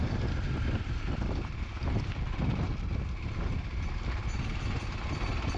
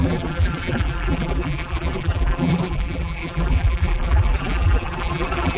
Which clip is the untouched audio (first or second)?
first